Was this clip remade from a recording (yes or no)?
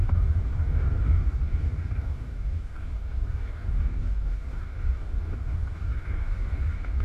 yes